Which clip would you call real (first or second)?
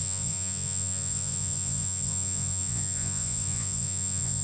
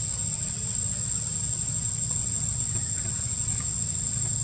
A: second